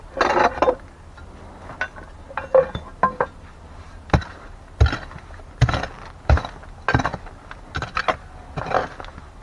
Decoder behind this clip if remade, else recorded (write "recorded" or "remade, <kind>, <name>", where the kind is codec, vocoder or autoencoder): recorded